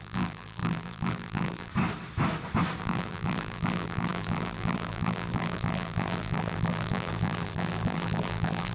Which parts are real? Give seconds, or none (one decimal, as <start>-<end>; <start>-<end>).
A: 1.7-2.8